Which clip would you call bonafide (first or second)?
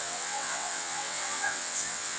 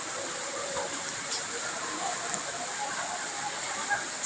second